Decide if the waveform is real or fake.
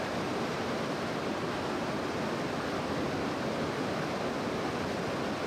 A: real